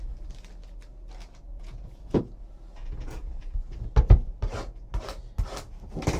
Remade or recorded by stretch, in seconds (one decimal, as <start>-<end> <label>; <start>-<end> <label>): 0.0-1.5 recorded; 1.5-2.2 remade; 2.2-2.8 recorded; 2.8-3.7 remade; 3.7-6.2 recorded